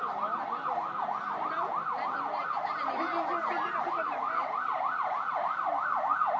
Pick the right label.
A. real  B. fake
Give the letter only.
A